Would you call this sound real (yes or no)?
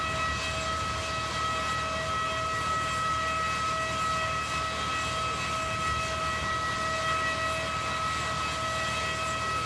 yes